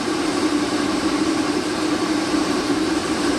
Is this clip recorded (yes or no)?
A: no